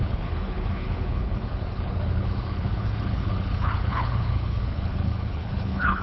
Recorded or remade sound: remade